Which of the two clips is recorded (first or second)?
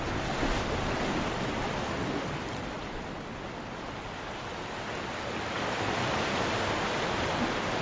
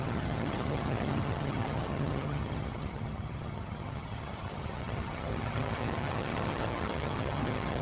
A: first